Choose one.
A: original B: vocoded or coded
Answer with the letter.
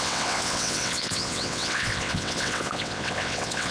B